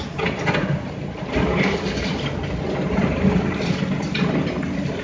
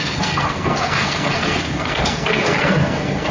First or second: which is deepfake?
second